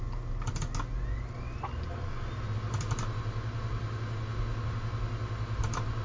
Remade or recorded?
recorded